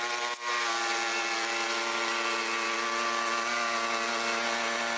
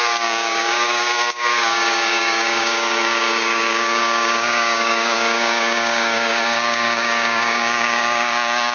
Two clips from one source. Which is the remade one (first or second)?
second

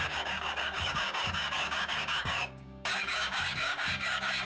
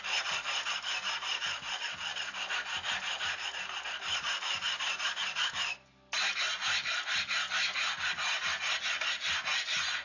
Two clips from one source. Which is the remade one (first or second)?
first